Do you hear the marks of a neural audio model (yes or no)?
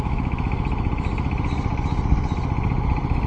no